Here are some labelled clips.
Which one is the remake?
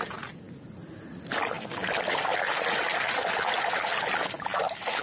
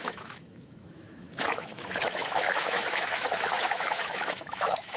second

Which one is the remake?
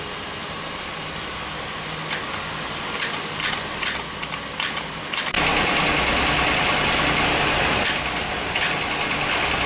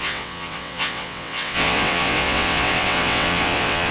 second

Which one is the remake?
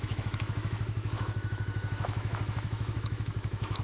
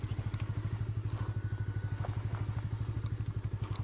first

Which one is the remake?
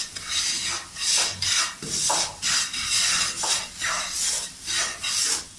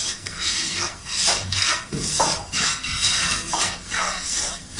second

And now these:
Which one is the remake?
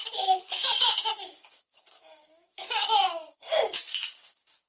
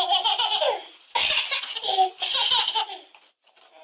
first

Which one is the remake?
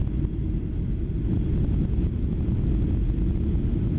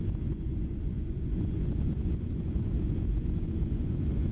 second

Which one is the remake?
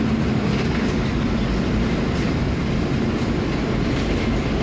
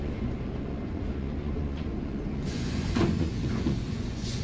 second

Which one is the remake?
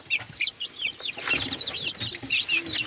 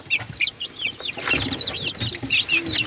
first